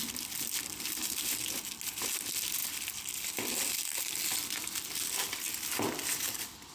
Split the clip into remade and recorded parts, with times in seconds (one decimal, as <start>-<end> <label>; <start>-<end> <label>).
0.0-6.7 recorded

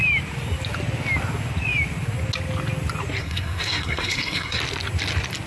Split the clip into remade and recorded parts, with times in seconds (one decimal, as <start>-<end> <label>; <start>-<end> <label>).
0.0-3.2 recorded; 3.2-4.6 remade; 4.6-5.5 recorded